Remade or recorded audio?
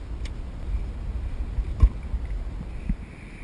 recorded